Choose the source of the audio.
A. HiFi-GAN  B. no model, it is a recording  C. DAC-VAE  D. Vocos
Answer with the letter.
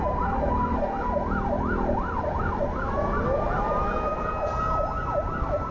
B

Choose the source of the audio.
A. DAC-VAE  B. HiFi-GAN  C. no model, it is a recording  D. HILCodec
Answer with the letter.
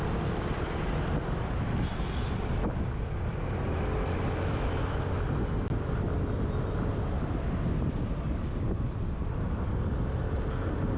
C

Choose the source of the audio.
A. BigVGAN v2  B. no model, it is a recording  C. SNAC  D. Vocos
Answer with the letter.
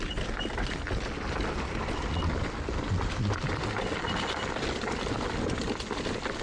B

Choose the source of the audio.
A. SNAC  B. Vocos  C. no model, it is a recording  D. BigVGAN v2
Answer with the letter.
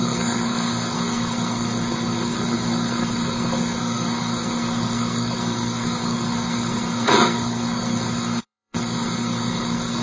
A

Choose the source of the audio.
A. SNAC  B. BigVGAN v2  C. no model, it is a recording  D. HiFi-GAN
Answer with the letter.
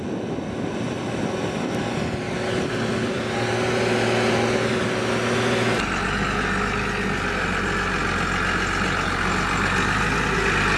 C